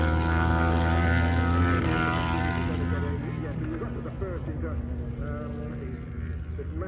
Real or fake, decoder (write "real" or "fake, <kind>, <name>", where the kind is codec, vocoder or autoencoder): real